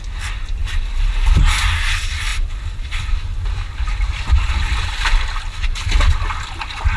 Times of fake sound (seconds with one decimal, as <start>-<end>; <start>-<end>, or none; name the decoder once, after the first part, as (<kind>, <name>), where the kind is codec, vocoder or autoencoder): 2.3-6.5 (vocoder, BigVGAN v2)